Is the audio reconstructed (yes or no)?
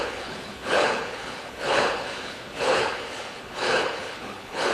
yes